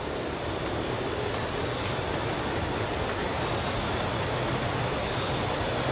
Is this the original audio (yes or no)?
yes